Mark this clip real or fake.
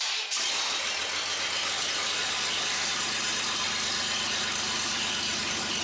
real